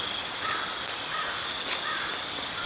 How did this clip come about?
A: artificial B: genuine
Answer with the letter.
A